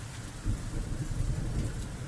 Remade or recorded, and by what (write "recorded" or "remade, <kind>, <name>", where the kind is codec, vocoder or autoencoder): remade, vocoder, BigVGAN v2